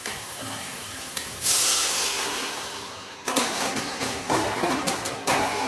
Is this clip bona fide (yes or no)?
no